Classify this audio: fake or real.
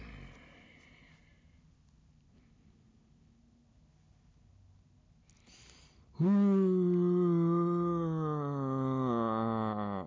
real